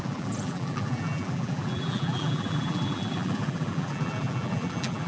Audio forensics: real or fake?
fake